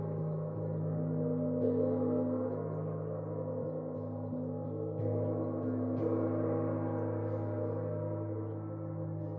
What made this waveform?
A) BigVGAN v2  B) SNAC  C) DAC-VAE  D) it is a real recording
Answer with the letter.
D